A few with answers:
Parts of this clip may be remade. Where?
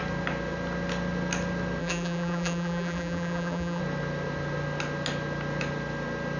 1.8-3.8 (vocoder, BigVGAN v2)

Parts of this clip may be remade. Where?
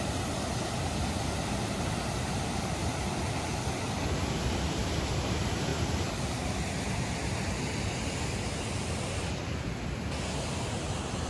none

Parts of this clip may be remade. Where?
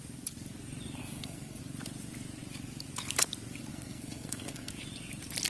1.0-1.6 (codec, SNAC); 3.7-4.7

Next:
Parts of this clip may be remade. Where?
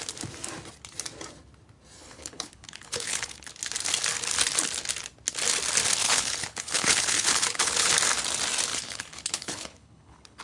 2.0-3.5 (codec, HILCodec); 6.0-7.9; 8.7-10.4